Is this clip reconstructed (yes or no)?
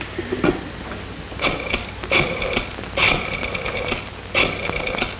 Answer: no